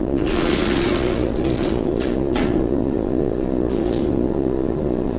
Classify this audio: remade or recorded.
remade